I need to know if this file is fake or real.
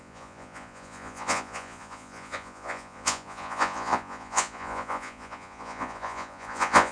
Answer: fake